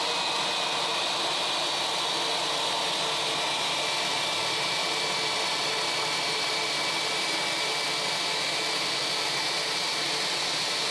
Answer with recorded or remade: recorded